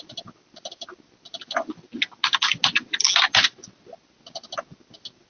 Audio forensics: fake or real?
real